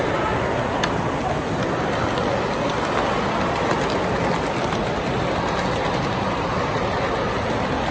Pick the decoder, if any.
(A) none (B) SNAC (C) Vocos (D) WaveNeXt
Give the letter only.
A